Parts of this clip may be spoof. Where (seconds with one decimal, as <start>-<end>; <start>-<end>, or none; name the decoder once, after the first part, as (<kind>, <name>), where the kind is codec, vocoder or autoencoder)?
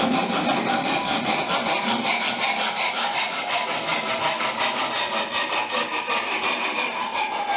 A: none